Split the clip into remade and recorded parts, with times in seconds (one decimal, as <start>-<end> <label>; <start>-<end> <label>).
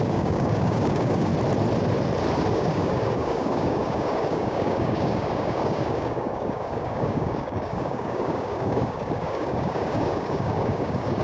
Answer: 0.0-1.3 remade; 1.3-2.5 recorded; 2.5-11.2 remade